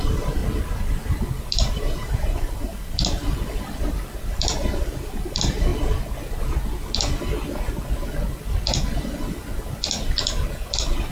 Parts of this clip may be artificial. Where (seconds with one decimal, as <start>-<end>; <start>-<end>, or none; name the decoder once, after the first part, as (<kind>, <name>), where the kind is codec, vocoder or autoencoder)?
0.0-0.4 (vocoder, BigVGAN v2); 1.7-2.7; 4.2-5.7